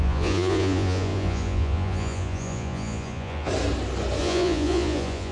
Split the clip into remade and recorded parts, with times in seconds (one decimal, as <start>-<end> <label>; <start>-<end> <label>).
0.0-3.5 remade; 3.5-4.2 recorded; 4.2-5.3 remade